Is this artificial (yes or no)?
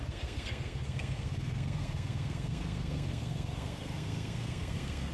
yes